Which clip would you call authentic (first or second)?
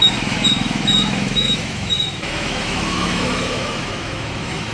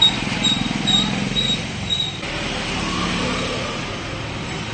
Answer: second